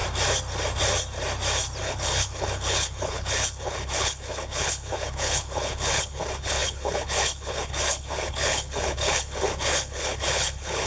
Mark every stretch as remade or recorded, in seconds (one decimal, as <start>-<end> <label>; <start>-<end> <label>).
0.0-1.8 recorded; 1.8-10.9 remade